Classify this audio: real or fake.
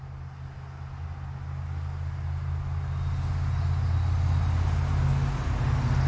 real